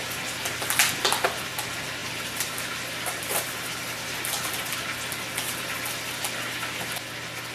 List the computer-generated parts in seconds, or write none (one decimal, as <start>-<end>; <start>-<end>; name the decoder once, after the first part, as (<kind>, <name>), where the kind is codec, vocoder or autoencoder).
2.0-4.5 (vocoder, BigVGAN v2)

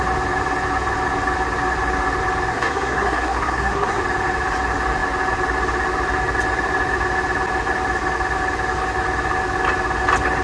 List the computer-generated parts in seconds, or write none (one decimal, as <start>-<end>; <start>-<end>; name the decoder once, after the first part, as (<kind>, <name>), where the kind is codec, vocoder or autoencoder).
2.5-4.0 (codec, SNAC)

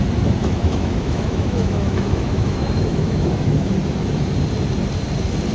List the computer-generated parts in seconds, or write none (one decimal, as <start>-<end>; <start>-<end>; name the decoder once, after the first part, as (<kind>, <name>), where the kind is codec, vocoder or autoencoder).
0.4-3.7 (autoencoder, DAC-VAE)

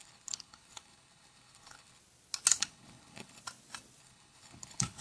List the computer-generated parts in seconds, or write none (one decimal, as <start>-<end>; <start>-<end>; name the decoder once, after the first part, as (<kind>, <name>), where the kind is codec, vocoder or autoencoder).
0.0-2.0 (codec, HILCodec); 2.6-3.4; 4.0-5.0

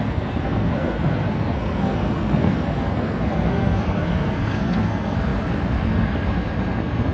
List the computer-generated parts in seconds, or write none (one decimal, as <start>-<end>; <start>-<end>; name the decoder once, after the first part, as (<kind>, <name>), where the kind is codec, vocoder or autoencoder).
0.0-7.1 (codec, SNAC)

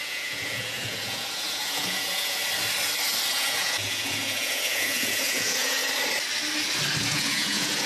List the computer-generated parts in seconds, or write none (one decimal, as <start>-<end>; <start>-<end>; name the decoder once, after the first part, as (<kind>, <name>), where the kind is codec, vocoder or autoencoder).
0.0-2.4 (vocoder, Vocos); 3.3-5.8; 7.0-7.9